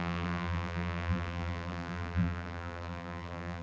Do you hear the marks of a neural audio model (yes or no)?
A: yes